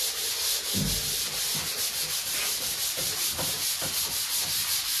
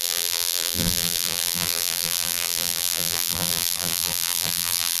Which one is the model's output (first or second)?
second